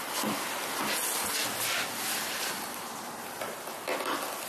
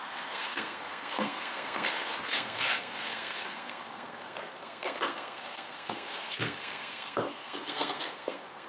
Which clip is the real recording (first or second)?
first